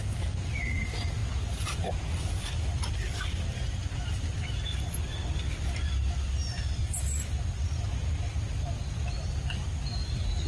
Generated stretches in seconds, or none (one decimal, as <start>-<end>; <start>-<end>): none